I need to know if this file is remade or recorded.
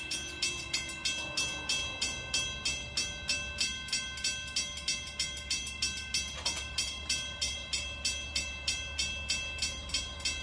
recorded